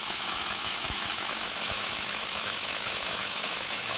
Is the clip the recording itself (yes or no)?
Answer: no